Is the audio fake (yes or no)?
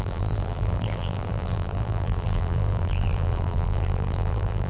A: yes